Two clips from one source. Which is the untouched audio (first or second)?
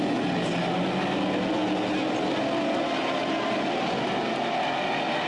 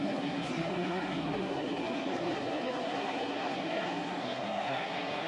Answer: first